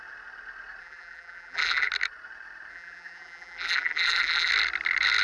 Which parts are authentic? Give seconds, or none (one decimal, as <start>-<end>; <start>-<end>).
0.0-0.8; 1.9-2.7; 4.5-5.2